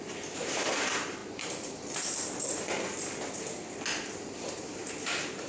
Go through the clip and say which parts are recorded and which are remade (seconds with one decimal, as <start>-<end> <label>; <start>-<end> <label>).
0.0-1.2 remade; 1.2-4.5 recorded; 4.5-5.5 remade